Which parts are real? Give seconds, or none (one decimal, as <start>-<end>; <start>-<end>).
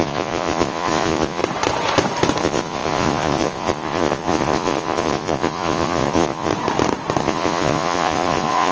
1.4-2.4; 6.5-7.2